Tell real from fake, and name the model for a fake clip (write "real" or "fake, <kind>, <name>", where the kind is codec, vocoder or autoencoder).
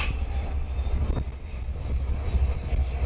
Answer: real